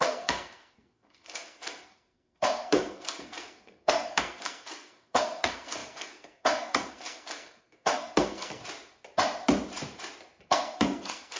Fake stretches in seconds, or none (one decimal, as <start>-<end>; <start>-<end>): 0.0-8.6; 10.5-11.4